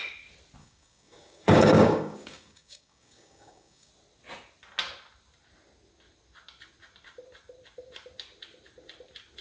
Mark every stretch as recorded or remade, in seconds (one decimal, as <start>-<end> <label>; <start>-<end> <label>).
0.0-0.6 recorded; 0.6-3.9 remade; 3.9-9.4 recorded

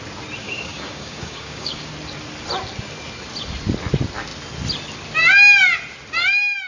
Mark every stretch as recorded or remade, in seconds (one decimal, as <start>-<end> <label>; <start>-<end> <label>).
0.0-0.4 recorded; 0.4-1.9 remade; 1.9-6.7 recorded

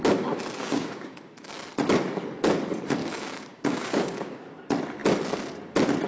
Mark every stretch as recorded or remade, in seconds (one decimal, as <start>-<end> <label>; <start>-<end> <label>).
0.0-0.6 recorded; 0.6-1.5 remade; 1.5-3.0 recorded; 3.0-4.4 remade; 4.4-6.1 recorded

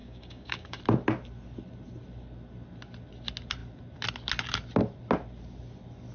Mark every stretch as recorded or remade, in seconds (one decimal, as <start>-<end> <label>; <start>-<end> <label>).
0.0-0.8 remade; 0.8-6.1 recorded